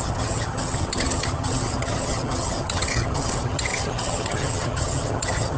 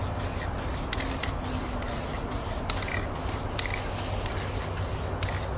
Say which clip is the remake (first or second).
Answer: first